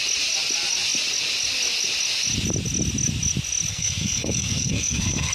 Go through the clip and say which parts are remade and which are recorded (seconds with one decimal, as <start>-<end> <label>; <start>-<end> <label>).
0.0-3.7 recorded; 3.7-5.3 remade